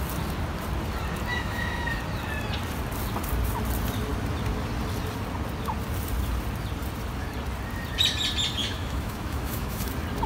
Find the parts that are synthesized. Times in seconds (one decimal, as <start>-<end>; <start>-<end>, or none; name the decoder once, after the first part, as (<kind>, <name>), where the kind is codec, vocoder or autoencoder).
1.3-2.0 (autoencoder, DAC-VAE); 8.6-9.9